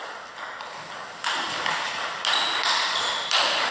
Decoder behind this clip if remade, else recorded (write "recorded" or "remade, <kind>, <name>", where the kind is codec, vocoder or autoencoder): recorded